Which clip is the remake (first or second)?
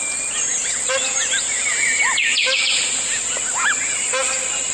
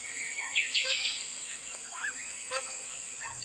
second